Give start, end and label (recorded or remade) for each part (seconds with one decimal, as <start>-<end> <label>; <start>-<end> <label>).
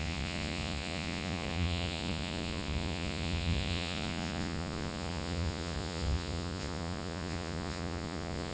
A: 0.0-8.5 remade